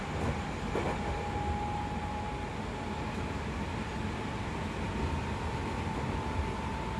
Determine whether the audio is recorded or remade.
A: recorded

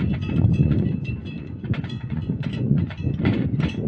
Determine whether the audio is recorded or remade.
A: remade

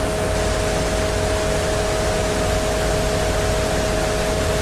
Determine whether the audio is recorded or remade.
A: recorded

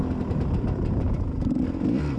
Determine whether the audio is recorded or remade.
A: recorded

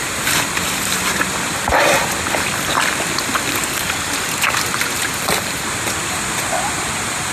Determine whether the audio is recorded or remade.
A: recorded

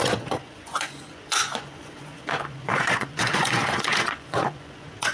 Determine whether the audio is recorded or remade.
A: remade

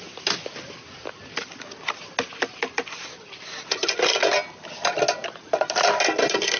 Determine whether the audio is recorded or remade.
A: recorded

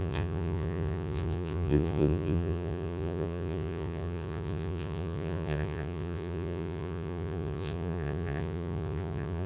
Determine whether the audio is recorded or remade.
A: remade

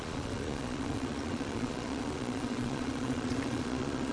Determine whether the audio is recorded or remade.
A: remade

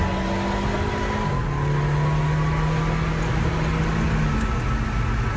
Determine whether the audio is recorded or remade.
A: recorded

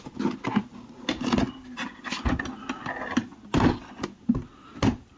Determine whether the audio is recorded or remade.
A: recorded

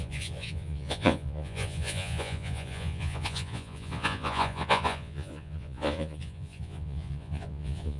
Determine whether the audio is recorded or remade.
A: remade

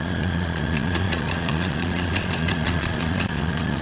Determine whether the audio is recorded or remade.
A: remade